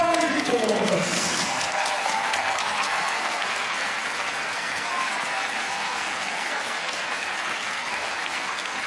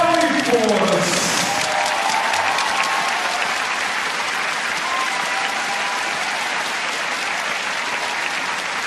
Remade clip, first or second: first